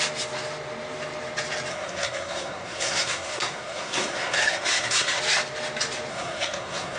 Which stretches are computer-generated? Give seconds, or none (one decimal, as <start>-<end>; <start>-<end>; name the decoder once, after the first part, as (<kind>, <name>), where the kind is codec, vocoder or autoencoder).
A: 1.7-5.2 (codec, SNAC); 6.1-7.0